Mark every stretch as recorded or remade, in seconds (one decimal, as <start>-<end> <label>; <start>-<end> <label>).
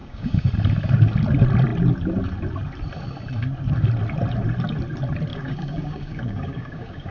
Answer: 0.0-0.5 remade; 0.5-5.3 recorded; 5.3-7.1 remade